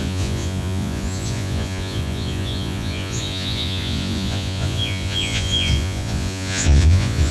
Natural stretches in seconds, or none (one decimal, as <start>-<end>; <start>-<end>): none